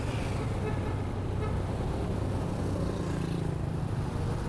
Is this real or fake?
real